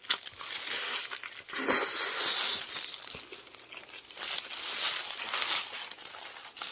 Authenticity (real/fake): real